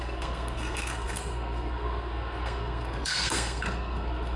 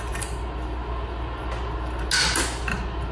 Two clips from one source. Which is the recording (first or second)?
second